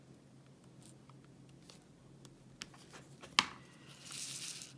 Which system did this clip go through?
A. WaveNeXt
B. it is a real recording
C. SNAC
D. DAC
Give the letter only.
B